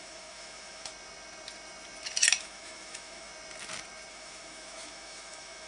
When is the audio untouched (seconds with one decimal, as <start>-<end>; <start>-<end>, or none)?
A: 0.9-2.4; 3.3-4.1